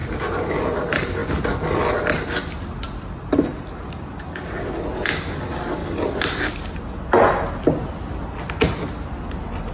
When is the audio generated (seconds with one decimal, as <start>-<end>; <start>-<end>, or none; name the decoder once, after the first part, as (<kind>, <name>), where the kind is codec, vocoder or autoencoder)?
0.0-0.6 (vocoder, BigVGAN v2); 1.2-1.8; 3.5-4.3; 5.8-6.5